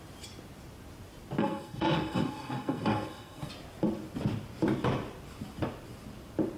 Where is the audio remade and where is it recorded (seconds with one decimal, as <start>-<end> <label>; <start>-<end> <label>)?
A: 0.0-1.4 recorded; 1.4-3.5 remade; 3.5-6.6 recorded